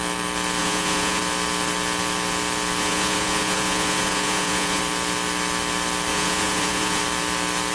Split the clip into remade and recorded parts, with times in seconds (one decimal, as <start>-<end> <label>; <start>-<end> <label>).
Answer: 0.0-0.6 recorded; 0.6-1.2 remade; 1.2-2.8 recorded; 2.8-4.8 remade; 4.8-6.1 recorded; 6.1-7.0 remade; 7.0-7.7 recorded